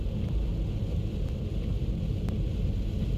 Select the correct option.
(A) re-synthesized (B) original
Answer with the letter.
B